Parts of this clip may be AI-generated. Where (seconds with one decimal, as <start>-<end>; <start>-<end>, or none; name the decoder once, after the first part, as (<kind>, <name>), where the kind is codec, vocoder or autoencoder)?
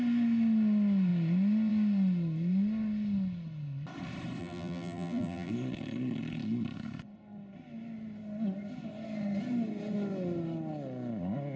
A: 4.4-5.5 (vocoder, BigVGAN v2)